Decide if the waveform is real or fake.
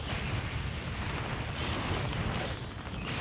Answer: real